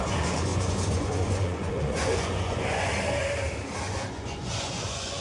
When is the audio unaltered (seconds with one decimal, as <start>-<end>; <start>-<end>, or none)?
2.9-3.8

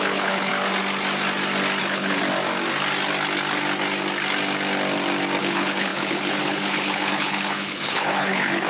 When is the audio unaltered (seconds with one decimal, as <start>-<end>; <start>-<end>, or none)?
0.5-1.8; 2.2-5.4

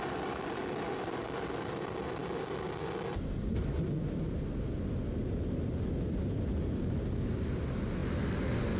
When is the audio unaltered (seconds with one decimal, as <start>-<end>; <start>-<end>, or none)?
0.0-8.8

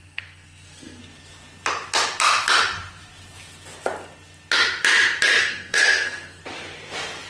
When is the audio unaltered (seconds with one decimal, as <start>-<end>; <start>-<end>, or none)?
1.0-5.4; 6.4-7.3

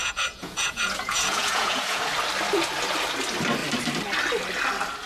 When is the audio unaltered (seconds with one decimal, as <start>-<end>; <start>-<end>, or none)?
2.1-5.1

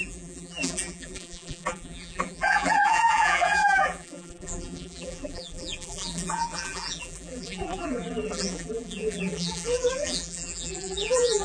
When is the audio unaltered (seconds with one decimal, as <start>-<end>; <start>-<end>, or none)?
none

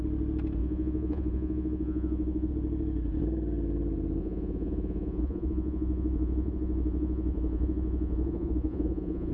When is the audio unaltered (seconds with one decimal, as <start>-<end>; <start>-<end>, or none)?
0.0-0.6; 2.5-4.2